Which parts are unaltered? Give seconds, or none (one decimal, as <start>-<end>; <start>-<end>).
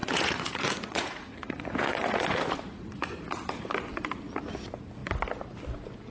3.7-6.1